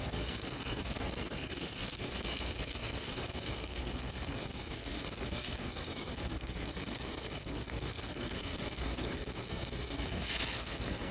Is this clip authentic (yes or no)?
no